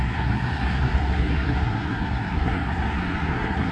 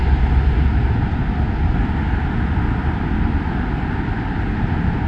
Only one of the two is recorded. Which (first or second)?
second